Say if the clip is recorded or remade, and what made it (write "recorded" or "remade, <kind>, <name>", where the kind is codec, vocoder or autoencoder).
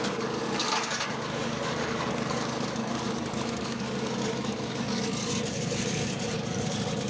remade, codec, DAC